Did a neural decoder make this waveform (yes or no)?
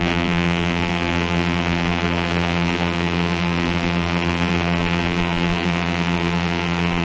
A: yes